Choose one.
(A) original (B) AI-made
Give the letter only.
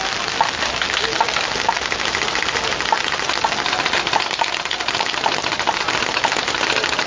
A